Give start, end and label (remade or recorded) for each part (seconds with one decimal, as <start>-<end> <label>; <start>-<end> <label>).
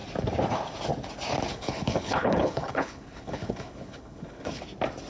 0.0-1.5 recorded; 1.5-4.6 remade; 4.6-5.1 recorded